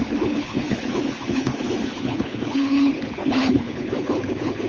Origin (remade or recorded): remade